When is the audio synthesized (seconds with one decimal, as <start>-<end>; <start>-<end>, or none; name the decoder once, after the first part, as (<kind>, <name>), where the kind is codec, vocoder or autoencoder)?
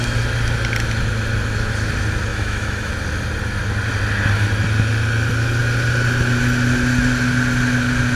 2.3-2.9 (autoencoder, DAC-VAE)